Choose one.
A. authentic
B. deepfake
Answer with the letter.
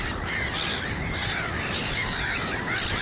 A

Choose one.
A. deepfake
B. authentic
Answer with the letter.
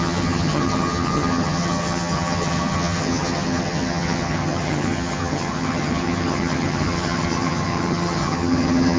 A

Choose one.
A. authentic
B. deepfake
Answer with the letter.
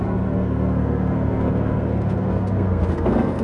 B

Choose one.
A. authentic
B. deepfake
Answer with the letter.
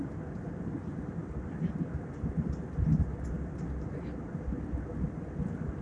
A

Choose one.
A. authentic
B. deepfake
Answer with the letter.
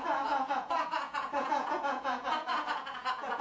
B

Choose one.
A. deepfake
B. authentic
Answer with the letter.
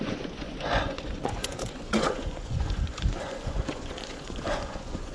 A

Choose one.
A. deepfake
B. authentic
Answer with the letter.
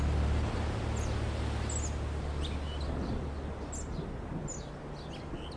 B